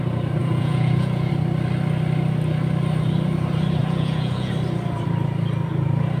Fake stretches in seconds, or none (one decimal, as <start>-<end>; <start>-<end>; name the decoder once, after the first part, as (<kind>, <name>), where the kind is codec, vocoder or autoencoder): 0.4-1.3 (vocoder, Vocos); 3.8-4.5